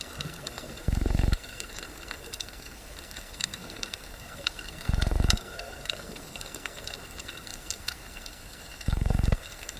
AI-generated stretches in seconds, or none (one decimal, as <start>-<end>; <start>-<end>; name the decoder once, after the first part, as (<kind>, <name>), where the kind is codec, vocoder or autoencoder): 0.0-9.8 (codec, SNAC)